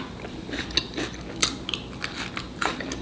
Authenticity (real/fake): real